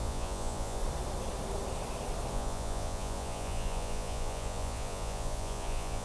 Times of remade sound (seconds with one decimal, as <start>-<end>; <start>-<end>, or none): 0.0-0.8; 2.3-6.0